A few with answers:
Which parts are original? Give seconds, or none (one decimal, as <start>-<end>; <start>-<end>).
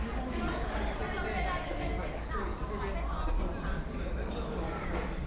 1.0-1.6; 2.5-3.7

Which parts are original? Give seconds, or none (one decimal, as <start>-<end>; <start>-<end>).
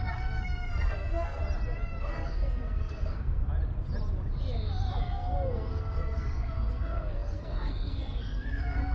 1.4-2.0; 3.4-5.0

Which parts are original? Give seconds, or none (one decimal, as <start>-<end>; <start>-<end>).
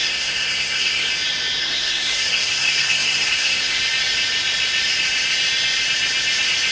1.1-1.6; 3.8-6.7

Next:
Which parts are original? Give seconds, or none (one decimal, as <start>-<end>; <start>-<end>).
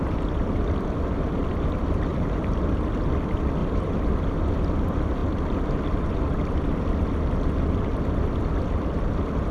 0.0-2.1; 2.6-3.6; 4.1-9.5